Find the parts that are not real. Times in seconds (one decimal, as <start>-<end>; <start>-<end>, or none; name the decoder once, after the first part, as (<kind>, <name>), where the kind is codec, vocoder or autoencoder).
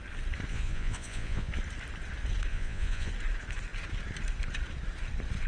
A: 0.5-1.5 (vocoder, Vocos); 2.5-3.1